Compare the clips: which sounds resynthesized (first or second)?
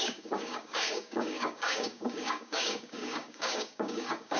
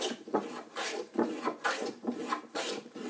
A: first